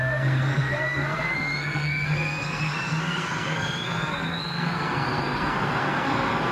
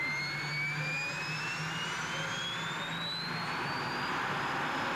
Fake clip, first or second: first